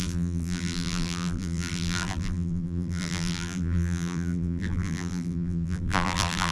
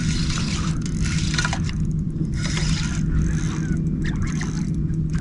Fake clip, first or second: first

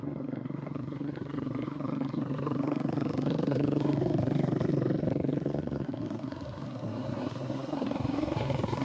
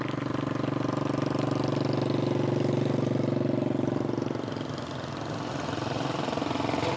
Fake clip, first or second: first